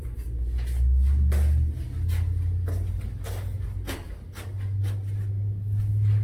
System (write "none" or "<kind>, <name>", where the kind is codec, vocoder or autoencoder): none